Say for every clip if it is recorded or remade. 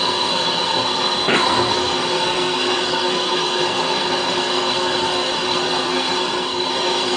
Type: remade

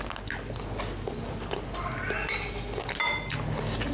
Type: recorded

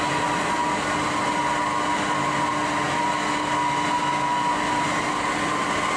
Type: recorded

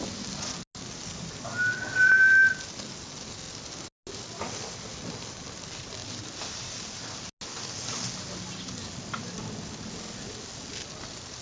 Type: recorded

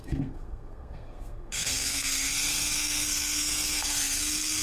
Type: remade